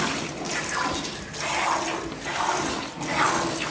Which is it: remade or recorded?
recorded